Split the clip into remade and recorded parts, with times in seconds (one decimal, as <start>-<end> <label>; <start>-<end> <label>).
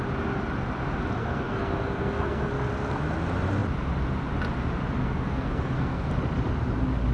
0.0-1.2 recorded; 1.2-2.5 remade; 2.5-5.0 recorded; 5.0-6.1 remade; 6.1-7.1 recorded